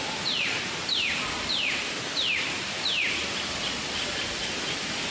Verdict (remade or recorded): remade